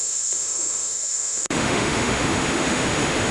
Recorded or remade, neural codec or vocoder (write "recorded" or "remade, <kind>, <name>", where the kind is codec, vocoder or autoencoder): remade, autoencoder, DAC-VAE